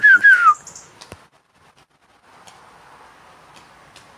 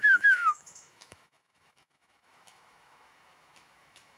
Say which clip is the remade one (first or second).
second